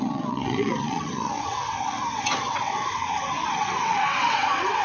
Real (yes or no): no